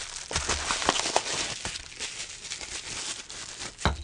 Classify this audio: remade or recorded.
recorded